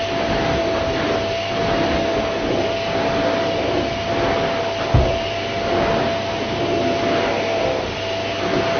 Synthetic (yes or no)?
no